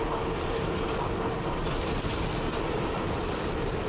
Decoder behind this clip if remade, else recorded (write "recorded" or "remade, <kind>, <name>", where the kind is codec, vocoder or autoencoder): recorded